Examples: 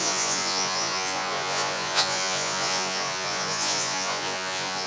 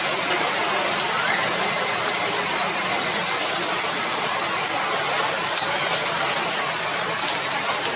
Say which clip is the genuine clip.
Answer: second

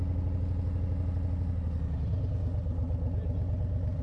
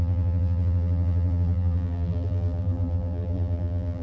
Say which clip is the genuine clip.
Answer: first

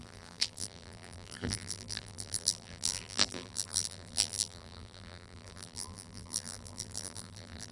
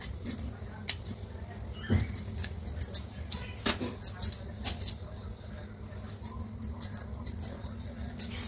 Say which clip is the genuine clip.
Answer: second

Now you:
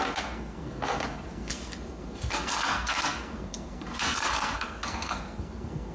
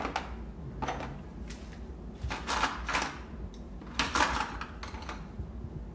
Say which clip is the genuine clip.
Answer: second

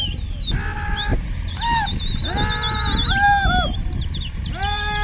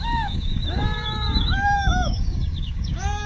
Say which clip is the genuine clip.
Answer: first